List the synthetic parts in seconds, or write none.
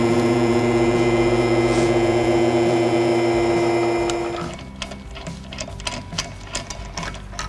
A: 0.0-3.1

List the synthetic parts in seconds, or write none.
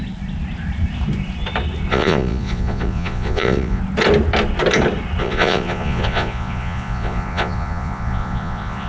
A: 1.9-3.8; 5.2-8.9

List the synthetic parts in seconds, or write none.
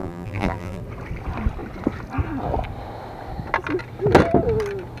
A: 0.0-0.8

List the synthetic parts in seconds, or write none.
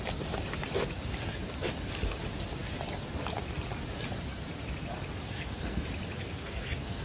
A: 5.2-5.8; 6.2-7.0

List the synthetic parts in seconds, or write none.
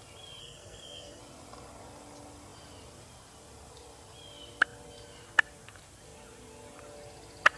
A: 0.4-1.2